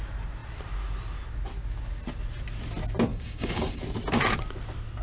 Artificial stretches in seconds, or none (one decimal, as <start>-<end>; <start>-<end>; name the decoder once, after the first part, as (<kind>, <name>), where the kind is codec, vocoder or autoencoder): 3.1-3.8 (codec, DAC)